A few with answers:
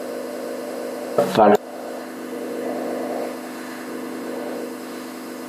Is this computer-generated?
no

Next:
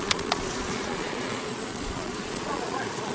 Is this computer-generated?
yes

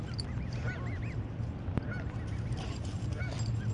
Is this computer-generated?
no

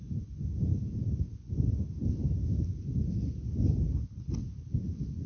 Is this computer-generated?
no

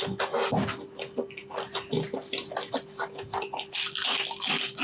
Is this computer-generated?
no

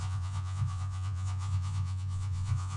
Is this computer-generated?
yes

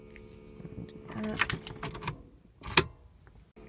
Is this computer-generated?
no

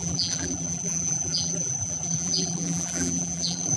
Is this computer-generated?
yes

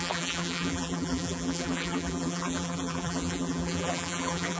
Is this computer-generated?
yes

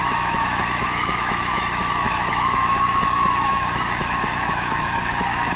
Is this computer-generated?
yes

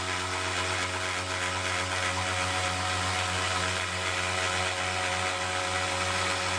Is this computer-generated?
no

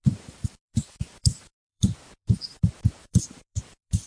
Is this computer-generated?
yes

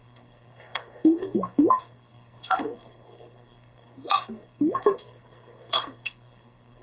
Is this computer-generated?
yes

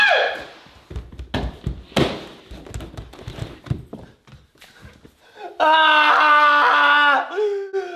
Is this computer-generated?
no